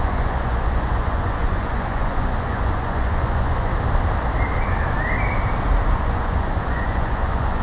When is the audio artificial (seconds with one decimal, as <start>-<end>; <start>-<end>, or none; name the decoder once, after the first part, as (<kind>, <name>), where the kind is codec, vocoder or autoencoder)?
0.0-3.7 (vocoder, Vocos); 5.9-7.6